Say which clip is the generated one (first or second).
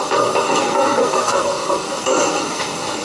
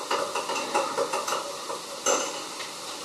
first